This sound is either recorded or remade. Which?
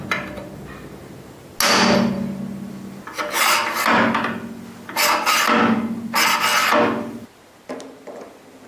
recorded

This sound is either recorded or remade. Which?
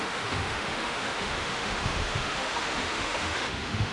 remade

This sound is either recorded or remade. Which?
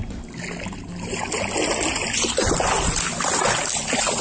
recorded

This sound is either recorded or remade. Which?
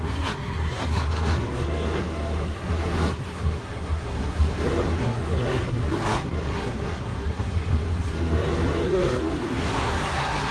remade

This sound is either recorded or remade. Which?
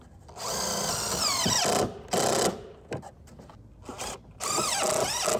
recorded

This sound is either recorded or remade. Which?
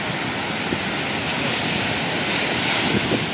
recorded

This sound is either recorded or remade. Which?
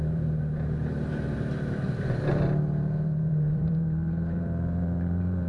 remade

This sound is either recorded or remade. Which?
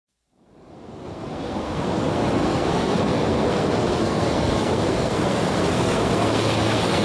remade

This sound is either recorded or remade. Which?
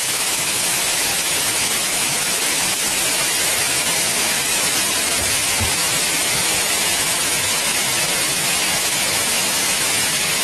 remade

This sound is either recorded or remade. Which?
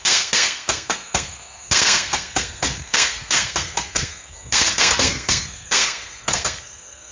remade